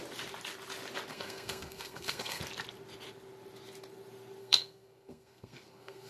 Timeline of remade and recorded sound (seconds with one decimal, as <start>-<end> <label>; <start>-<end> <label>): 0.0-1.1 recorded; 1.1-2.4 remade; 2.4-4.4 recorded; 4.4-6.1 remade